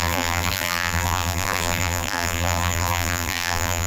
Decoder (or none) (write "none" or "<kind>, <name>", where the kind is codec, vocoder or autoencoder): vocoder, BigVGAN v2